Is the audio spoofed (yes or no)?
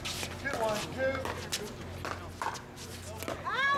no